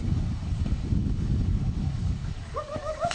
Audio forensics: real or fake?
fake